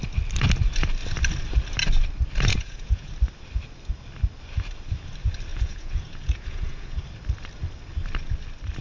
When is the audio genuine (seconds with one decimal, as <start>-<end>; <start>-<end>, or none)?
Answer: 0.0-2.5; 3.1-5.5; 7.0-8.8